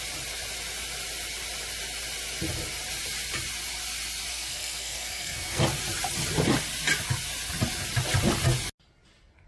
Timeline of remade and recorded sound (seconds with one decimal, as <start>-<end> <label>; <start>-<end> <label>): 0.0-4.3 recorded; 4.3-5.6 remade; 5.6-9.5 recorded